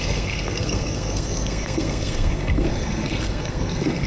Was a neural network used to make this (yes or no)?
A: yes